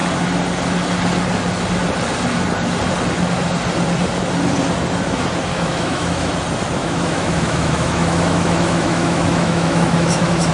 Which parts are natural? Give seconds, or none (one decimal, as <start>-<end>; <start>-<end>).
0.0-5.5; 6.3-6.8